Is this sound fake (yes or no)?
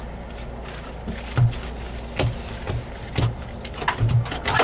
no